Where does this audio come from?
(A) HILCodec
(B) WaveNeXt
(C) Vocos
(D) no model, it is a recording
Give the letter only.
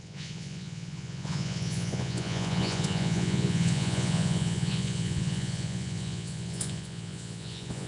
C